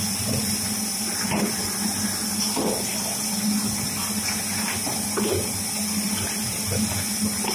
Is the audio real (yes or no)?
yes